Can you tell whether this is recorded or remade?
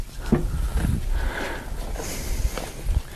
recorded